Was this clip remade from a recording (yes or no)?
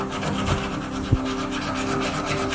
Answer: no